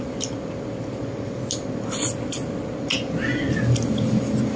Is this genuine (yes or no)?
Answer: yes